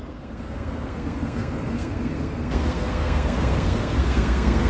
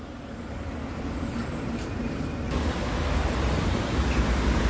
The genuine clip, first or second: second